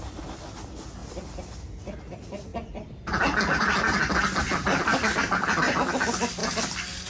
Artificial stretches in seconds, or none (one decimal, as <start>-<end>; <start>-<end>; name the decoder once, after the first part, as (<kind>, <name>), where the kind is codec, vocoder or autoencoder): none